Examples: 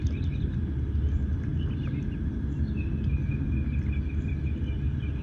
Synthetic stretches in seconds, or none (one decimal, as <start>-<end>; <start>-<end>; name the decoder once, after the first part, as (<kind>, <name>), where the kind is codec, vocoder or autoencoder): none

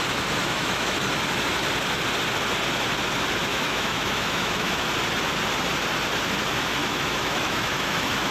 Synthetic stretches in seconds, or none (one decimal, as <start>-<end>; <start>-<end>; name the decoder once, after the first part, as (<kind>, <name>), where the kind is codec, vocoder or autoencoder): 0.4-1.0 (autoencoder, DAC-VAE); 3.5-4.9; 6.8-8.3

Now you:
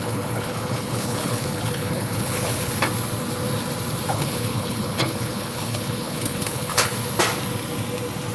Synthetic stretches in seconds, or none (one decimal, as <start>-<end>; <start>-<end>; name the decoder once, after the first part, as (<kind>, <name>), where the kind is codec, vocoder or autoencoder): 0.0-2.7 (codec, HILCodec); 4.1-6.9

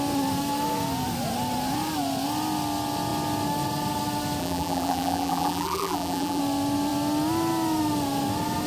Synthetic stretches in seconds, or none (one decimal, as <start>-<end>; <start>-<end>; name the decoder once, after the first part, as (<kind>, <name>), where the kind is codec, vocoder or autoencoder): 4.4-6.4 (vocoder, BigVGAN v2)

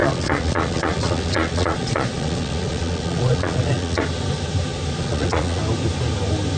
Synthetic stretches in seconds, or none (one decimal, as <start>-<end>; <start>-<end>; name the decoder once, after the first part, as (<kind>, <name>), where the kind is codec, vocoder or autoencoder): 0.0-4.0 (vocoder, Vocos); 5.0-5.6

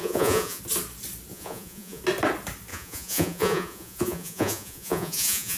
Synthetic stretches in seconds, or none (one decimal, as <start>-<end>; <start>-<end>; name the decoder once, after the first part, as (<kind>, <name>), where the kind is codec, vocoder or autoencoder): 0.0-0.6 (vocoder, Vocos); 1.3-2.0; 2.7-5.6